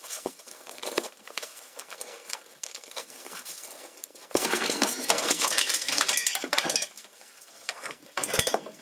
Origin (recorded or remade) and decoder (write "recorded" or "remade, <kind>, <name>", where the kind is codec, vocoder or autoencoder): remade, codec, SNAC